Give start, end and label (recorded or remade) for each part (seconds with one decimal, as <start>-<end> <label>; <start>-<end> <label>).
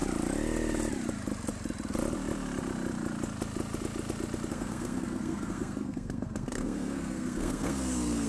0.0-4.5 recorded; 4.5-8.3 remade